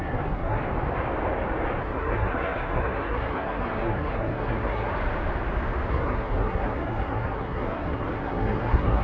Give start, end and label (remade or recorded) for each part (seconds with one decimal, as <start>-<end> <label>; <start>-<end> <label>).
0.0-0.6 remade; 0.6-1.8 recorded; 1.8-4.9 remade; 4.9-5.9 recorded; 5.9-9.0 remade